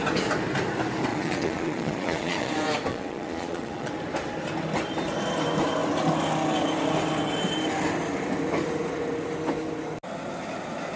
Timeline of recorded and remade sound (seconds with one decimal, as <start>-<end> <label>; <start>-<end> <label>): 0.0-1.1 recorded; 1.1-2.5 remade; 2.5-2.9 recorded; 2.9-3.9 remade; 3.9-11.0 recorded

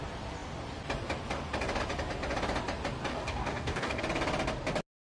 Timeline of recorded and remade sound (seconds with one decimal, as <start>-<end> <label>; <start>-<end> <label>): 0.0-3.1 recorded; 3.1-4.0 remade; 4.0-5.1 recorded

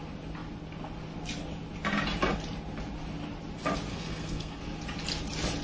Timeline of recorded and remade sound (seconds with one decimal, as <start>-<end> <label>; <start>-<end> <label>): 0.0-3.9 recorded; 3.9-4.6 remade; 4.6-5.6 recorded

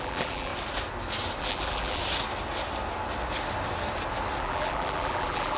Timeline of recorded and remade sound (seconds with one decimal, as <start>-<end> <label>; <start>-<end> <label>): 0.0-0.5 remade; 0.5-1.4 recorded; 1.4-2.0 remade; 2.0-4.4 recorded; 4.4-5.6 remade